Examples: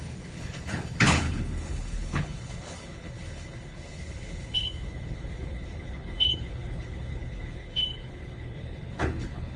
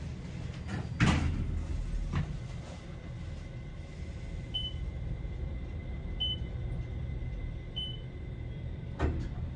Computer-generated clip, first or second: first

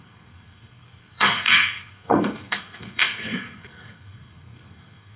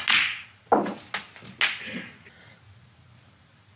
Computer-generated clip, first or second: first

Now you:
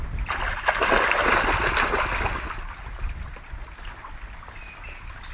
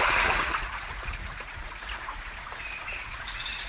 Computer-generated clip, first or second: second